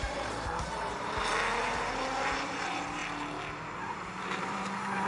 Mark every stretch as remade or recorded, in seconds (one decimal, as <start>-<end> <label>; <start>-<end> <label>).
0.0-1.3 remade; 1.3-1.9 recorded; 1.9-3.0 remade; 3.0-4.2 recorded; 4.2-5.1 remade